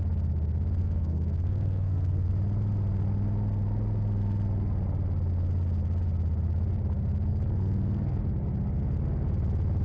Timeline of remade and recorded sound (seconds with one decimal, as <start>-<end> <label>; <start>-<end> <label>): 0.0-0.8 recorded; 0.8-2.3 remade; 2.3-7.3 recorded; 7.3-8.2 remade; 8.2-9.8 recorded